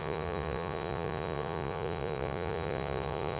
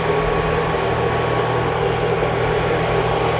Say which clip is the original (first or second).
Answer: second